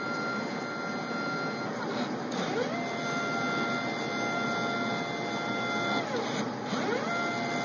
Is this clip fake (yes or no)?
no